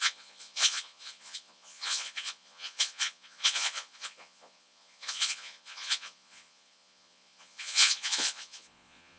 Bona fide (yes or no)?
no